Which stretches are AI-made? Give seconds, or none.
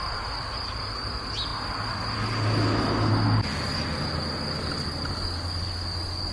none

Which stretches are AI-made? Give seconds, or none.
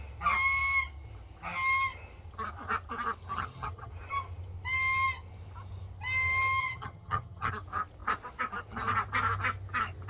3.3-3.9 (vocoder, HiFi-GAN); 6.6-7.5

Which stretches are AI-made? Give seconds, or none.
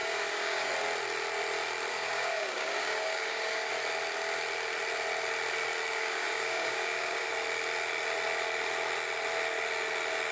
0.0-0.7 (codec, DAC); 1.9-3.7; 5.9-7.3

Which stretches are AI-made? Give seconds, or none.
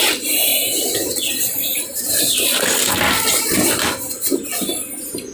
none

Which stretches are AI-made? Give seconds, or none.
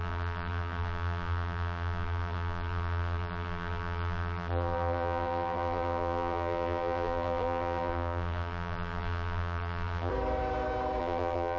0.0-10.1 (vocoder, BigVGAN v2); 11.0-11.6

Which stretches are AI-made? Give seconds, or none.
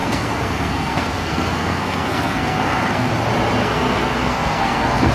0.0-3.1 (codec, SNAC); 3.6-5.1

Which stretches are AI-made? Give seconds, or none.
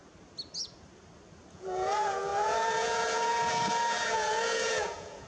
1.5-5.3 (vocoder, Vocos)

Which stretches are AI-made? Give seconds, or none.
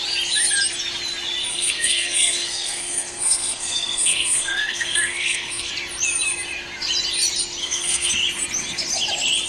1.5-5.7 (codec, SNAC); 7.6-8.1